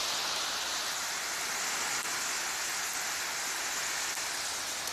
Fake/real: real